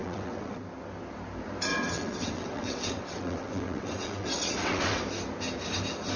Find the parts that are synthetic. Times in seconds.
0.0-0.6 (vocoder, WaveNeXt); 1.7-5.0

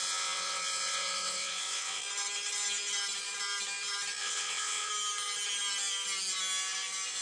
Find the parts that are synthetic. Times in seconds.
0.0-2.0 (vocoder, WaveNeXt); 4.2-4.9

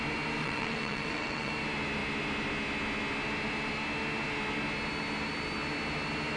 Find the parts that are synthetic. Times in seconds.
0.4-1.5 (vocoder, WaveNeXt)

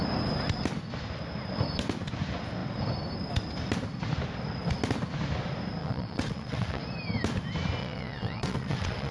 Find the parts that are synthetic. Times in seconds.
5.8-6.8 (vocoder, WaveNeXt); 7.8-9.1

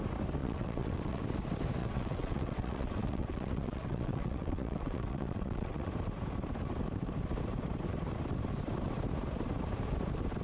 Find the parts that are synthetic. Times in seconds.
0.4-1.2 (vocoder, WaveNeXt); 1.8-5.9

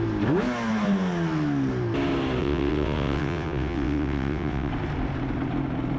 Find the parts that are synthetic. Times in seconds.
2.4-4.7 (vocoder, WaveNeXt)

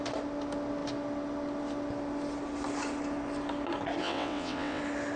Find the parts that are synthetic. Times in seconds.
4.0-4.8 (vocoder, WaveNeXt)

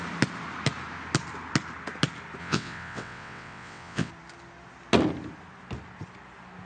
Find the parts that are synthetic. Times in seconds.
2.4-4.1 (vocoder, WaveNeXt)